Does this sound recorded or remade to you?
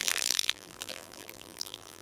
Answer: remade